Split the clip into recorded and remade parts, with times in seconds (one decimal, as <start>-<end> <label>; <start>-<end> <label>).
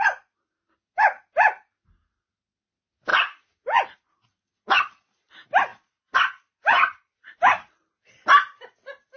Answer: 0.0-5.7 recorded; 5.7-7.7 remade; 7.7-9.2 recorded